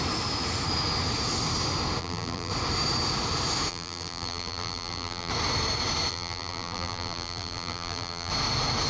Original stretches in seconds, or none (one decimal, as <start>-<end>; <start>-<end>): 0.0-2.0; 2.5-3.7; 5.3-6.1; 8.3-8.9